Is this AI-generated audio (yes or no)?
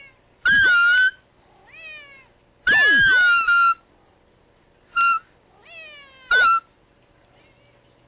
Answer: no